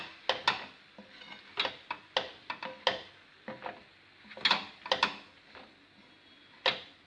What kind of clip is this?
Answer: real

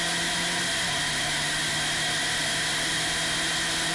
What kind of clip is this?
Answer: real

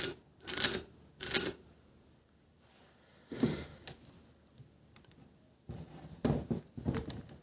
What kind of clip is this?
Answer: real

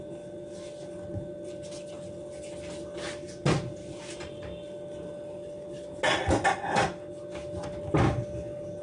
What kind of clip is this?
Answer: real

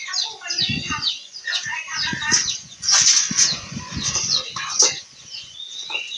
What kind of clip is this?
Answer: fake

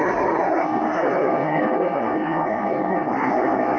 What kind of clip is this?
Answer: fake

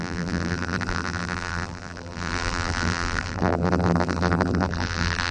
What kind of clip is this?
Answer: fake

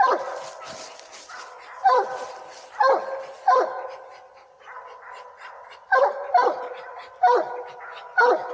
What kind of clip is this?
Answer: real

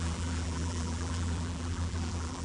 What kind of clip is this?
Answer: fake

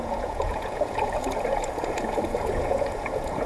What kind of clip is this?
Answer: fake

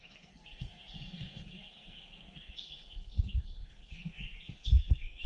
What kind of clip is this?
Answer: fake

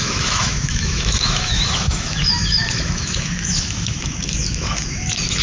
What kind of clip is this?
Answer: fake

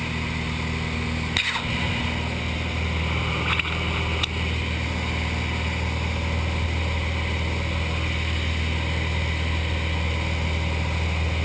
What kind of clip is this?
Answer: real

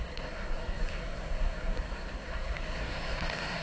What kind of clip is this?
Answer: fake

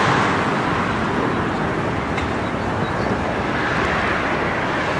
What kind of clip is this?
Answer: real